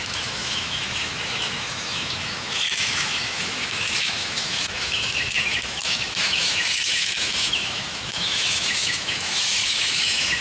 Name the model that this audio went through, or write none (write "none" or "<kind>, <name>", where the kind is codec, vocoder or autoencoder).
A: autoencoder, DAC-VAE